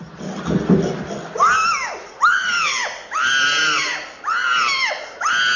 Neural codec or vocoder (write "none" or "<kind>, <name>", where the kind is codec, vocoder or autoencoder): none